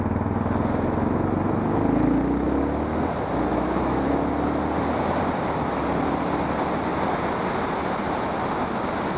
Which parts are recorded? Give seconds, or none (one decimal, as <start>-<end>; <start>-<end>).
0.0-3.5; 4.1-9.2